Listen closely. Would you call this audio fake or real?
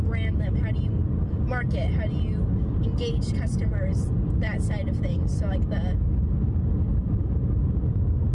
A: real